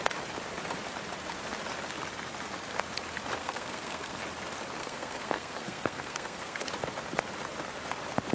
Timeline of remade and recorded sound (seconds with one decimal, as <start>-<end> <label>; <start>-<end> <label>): 0.0-3.4 recorded; 3.4-4.2 remade; 4.2-4.8 recorded; 4.8-6.7 remade; 6.7-8.3 recorded